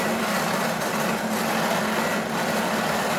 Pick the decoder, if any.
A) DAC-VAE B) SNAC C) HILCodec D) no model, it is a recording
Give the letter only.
D